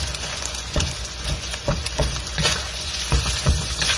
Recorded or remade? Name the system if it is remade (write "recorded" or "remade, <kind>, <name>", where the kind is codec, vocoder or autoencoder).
remade, vocoder, Vocos